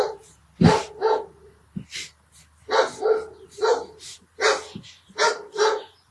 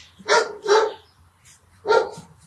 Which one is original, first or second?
first